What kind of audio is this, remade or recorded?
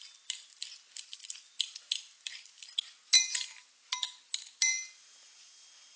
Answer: recorded